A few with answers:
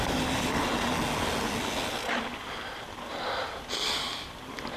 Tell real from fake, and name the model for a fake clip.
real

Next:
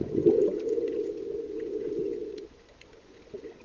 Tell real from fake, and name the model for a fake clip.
fake, vocoder, Vocos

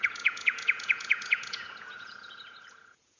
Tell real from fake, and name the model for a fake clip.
fake, vocoder, Vocos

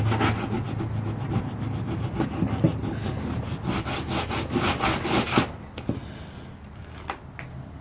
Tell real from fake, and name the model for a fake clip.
real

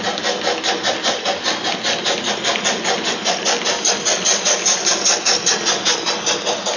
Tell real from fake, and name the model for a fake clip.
real